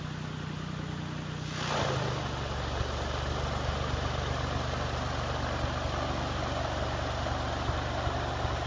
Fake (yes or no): no